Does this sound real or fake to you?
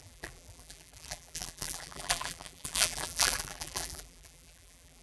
fake